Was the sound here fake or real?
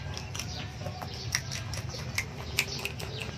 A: real